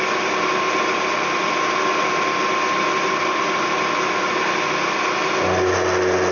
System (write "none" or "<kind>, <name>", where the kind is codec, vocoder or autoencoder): none